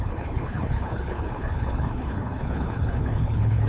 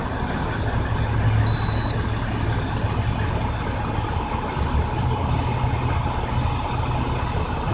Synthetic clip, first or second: first